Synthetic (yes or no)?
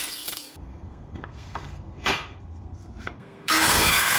yes